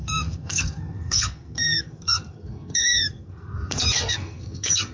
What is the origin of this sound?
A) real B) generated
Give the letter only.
B